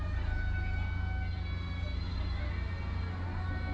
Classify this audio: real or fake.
real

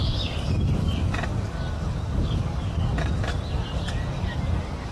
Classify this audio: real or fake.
fake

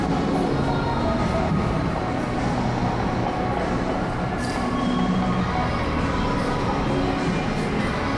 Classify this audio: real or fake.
real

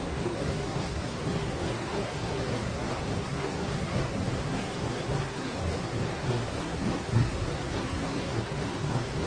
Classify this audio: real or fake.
fake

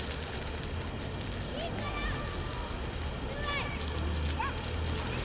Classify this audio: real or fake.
real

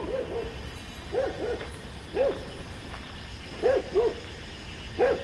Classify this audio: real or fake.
real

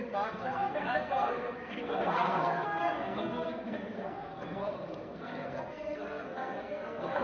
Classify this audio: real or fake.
fake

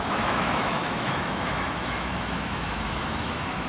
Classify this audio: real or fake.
fake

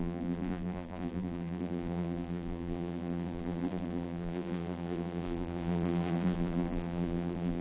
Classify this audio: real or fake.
fake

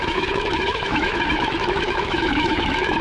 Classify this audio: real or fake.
fake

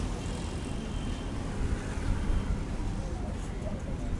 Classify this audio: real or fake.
real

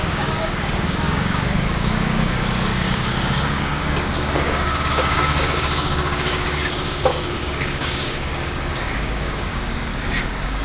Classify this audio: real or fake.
fake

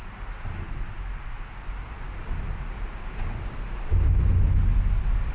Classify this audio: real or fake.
real